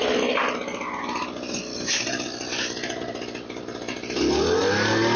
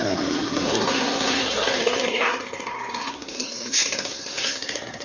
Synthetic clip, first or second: second